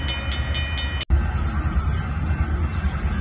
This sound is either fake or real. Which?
real